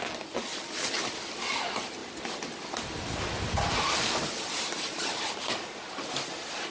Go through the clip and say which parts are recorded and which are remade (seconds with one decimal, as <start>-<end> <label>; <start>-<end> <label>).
0.0-6.7 recorded